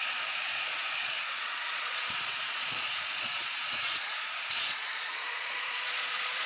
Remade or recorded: remade